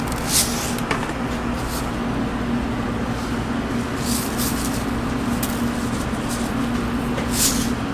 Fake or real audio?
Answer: real